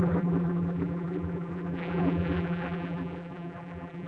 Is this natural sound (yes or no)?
no